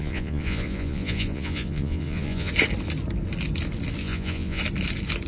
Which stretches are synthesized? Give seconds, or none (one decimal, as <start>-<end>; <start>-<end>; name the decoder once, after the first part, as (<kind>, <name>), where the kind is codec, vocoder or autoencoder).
0.0-2.5 (vocoder, Vocos); 4.0-4.6